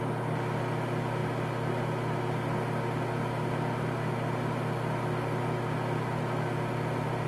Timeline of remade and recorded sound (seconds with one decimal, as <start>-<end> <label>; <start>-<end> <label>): 0.0-7.3 recorded